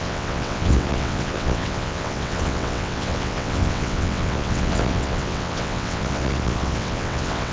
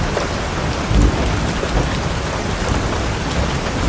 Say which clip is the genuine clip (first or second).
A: second